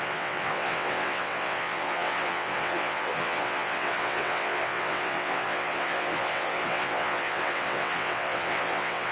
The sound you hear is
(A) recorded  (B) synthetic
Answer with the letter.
B